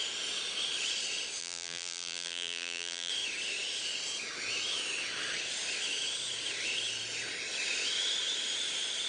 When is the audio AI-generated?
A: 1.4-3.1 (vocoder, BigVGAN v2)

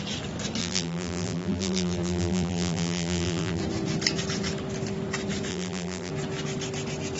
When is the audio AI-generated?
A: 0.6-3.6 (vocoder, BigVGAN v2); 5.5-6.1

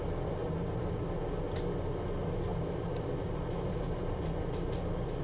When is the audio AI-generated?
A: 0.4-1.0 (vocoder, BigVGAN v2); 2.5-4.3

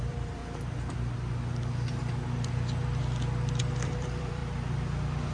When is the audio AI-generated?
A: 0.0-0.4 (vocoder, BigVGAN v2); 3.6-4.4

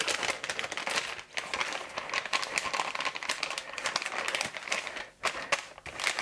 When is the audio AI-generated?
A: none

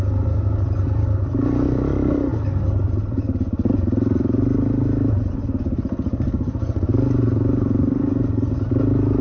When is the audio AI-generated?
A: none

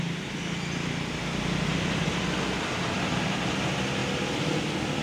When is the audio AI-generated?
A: none